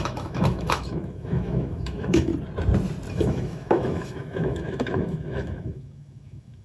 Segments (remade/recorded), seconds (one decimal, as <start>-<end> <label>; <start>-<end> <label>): 0.0-2.3 remade; 2.3-3.1 recorded; 3.1-6.6 remade